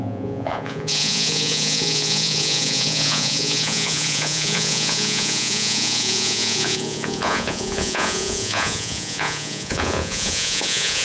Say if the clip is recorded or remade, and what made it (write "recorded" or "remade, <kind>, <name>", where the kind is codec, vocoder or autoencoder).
remade, vocoder, Vocos